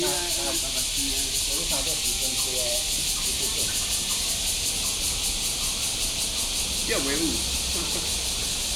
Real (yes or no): yes